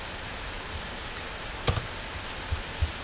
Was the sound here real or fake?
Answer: real